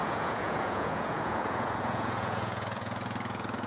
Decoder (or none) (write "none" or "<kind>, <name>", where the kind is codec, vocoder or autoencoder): vocoder, Vocos